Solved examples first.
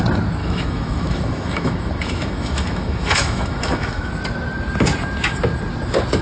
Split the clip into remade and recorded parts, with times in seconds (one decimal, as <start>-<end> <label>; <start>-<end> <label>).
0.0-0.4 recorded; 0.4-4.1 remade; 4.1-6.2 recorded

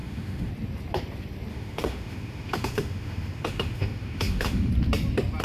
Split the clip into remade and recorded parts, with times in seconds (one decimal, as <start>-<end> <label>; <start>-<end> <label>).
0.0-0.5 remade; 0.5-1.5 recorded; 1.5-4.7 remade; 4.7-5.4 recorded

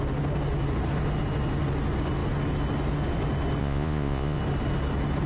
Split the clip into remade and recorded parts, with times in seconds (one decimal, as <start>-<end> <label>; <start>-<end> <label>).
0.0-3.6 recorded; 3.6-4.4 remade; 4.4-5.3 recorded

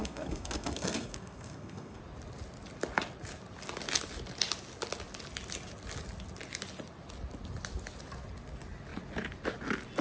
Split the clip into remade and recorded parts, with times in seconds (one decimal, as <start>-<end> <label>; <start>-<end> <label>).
0.0-2.0 remade; 2.0-10.0 recorded

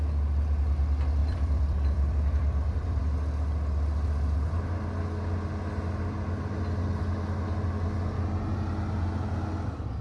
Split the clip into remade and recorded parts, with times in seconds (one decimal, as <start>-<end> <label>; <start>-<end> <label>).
0.0-1.2 recorded; 1.2-3.0 remade; 3.0-10.0 recorded

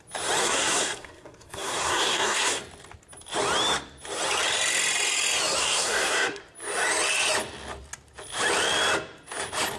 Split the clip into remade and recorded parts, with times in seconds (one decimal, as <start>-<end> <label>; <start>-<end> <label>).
0.0-0.4 recorded; 0.4-2.6 remade; 2.6-5.6 recorded; 5.6-6.4 remade; 6.4-9.8 recorded

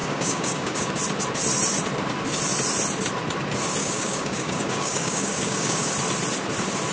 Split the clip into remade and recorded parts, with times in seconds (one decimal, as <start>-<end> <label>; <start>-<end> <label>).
0.0-0.9 remade; 0.9-3.8 recorded; 3.8-5.9 remade; 5.9-6.9 recorded

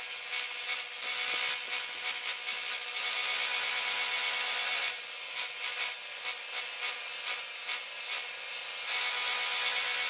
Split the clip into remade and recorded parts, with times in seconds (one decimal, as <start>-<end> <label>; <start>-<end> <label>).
0.0-10.1 recorded